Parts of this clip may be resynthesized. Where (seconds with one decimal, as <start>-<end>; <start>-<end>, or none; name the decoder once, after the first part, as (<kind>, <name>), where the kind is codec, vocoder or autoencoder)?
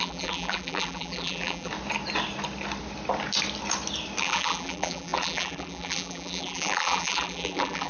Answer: 0.0-1.7 (vocoder, BigVGAN v2); 4.2-7.9